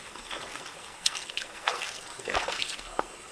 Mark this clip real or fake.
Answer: fake